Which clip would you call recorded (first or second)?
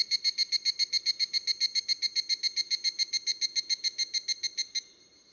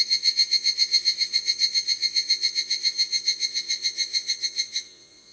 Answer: first